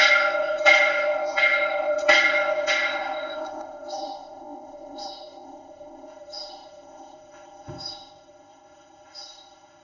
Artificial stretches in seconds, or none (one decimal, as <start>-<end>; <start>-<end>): 0.0-9.8